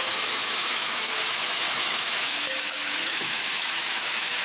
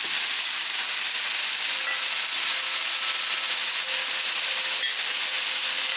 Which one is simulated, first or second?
first